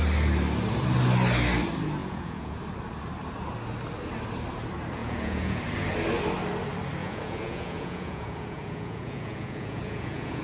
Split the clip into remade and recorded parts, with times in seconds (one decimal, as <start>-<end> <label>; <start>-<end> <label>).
0.0-2.0 recorded; 2.0-2.6 remade; 2.6-5.0 recorded; 5.0-5.6 remade; 5.6-7.0 recorded; 7.0-10.4 remade